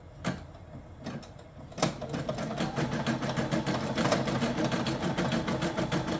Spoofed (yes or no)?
no